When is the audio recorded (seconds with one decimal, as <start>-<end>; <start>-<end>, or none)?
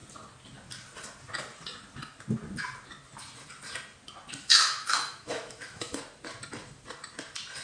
0.0-4.4; 6.0-7.6